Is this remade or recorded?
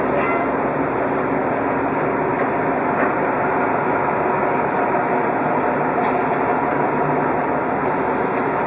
recorded